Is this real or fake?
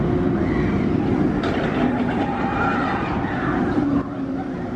real